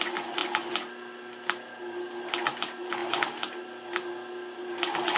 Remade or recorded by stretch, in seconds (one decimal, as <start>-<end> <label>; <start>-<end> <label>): 0.0-5.2 recorded